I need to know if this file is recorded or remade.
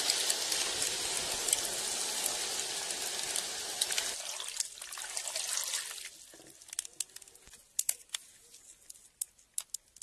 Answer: recorded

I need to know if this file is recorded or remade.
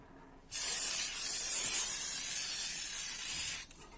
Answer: recorded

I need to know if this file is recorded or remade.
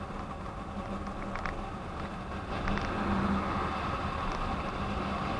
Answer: recorded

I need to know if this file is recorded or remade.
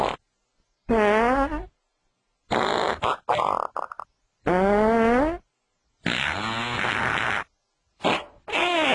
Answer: recorded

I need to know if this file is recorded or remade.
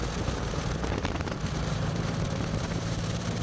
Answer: remade